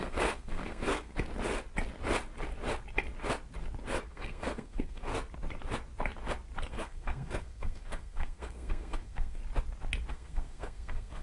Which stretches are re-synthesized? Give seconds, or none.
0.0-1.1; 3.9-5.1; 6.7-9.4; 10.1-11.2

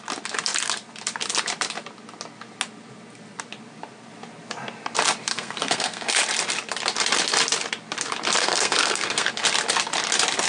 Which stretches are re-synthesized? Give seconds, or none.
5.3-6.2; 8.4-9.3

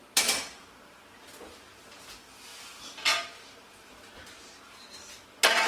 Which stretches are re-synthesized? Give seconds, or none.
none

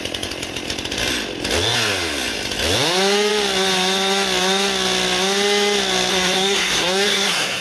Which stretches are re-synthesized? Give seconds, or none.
6.1-7.6

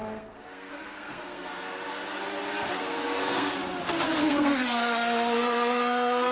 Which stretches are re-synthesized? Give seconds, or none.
0.0-1.5; 2.8-3.5; 4.2-6.3

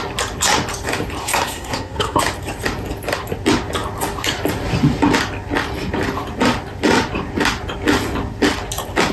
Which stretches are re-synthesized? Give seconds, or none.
1.2-2.2

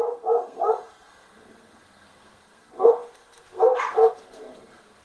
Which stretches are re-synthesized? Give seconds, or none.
0.0-5.0